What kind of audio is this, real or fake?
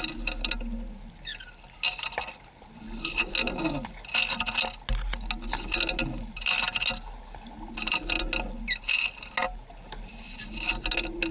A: real